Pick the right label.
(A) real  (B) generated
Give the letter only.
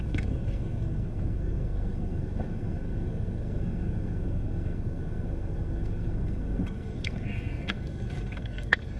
B